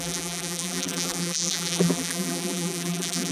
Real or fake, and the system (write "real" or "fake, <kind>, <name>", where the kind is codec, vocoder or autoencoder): fake, vocoder, BigVGAN v2